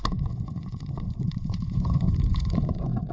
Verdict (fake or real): fake